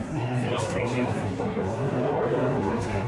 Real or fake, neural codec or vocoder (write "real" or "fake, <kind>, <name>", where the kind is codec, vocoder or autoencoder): fake, codec, SNAC